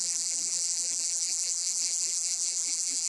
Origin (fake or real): fake